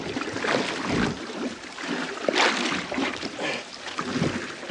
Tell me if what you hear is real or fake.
real